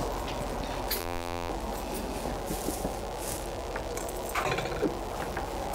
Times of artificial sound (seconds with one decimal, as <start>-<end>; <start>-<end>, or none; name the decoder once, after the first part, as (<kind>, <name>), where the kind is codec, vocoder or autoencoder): 1.0-1.5 (vocoder, BigVGAN v2)